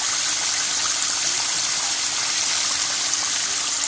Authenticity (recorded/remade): recorded